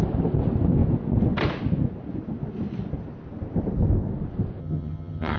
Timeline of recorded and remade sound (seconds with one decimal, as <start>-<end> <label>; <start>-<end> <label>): 0.0-4.6 recorded; 4.6-5.4 remade